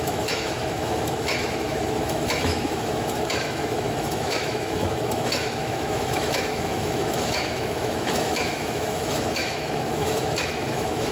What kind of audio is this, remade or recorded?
remade